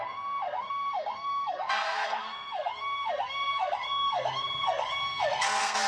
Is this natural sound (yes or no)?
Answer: no